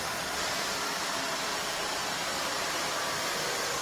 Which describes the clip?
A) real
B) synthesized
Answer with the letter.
A